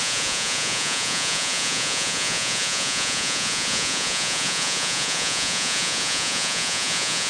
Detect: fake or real fake